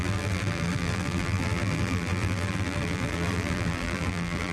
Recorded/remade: remade